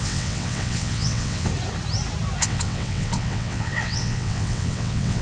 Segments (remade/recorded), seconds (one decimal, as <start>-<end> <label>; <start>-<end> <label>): 0.0-1.5 remade; 1.5-2.4 recorded; 2.4-5.2 remade